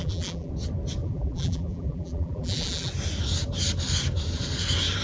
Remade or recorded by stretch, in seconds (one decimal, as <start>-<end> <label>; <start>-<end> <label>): 0.0-0.5 remade; 0.5-1.0 recorded; 1.0-2.9 remade; 2.9-5.0 recorded